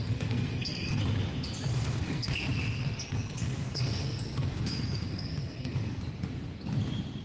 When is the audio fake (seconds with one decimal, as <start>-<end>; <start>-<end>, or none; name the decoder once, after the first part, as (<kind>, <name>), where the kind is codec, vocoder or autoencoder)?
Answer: 0.0-1.0 (codec, SNAC); 1.7-6.0

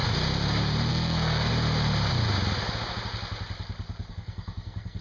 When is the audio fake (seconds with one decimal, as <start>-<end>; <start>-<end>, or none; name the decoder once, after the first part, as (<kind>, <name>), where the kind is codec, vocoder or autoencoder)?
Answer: 0.9-1.5 (codec, SNAC); 4.1-5.0

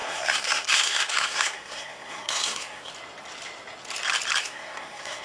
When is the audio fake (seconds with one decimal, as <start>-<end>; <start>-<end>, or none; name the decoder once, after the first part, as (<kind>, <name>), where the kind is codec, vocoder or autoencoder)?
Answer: 0.0-2.9 (codec, SNAC); 4.4-5.2

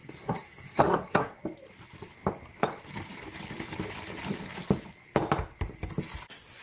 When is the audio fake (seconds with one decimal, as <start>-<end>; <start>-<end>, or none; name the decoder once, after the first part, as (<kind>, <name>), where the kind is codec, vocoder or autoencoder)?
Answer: 0.0-1.4 (codec, SNAC)

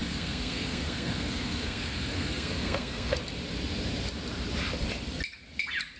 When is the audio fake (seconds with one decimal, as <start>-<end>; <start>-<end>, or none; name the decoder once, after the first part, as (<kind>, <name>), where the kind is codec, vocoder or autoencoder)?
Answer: 0.0-3.2 (codec, SNAC)

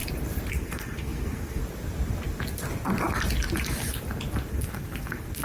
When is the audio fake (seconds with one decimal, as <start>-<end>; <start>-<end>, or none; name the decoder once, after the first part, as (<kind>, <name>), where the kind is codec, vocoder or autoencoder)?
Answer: 0.5-1.6 (codec, SNAC); 4.5-5.4